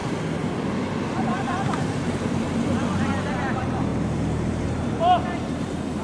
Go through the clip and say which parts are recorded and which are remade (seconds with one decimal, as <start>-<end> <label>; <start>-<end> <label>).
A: 0.0-1.3 recorded; 1.3-6.0 remade